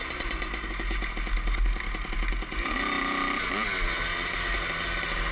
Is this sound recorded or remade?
recorded